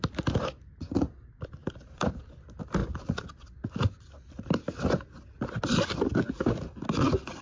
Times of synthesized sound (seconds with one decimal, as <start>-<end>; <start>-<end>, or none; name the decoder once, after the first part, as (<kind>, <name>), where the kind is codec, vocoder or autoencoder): 1.6-2.2 (vocoder, BigVGAN v2)